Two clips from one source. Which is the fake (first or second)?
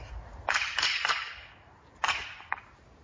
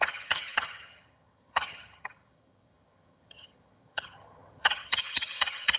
second